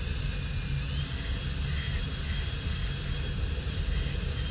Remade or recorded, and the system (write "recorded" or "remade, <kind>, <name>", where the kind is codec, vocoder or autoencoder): recorded